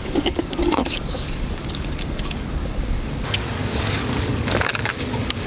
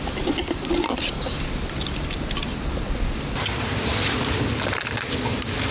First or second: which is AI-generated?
first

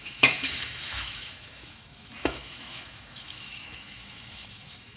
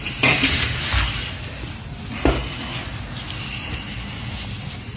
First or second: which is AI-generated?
first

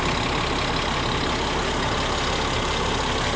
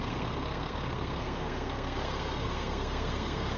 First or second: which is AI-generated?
second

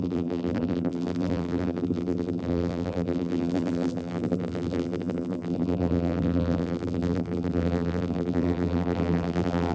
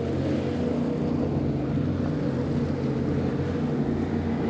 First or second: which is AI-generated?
first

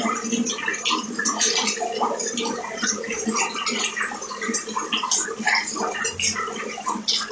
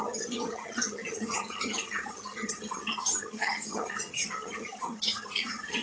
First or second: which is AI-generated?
second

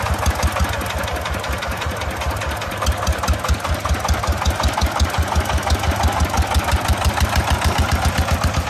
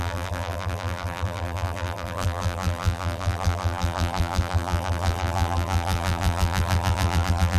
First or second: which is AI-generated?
second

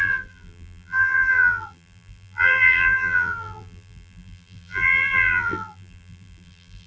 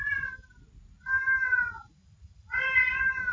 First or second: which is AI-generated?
first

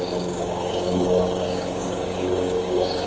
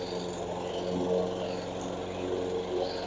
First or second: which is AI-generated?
first